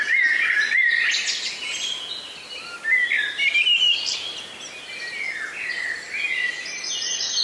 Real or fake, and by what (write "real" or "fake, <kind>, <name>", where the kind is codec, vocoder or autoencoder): real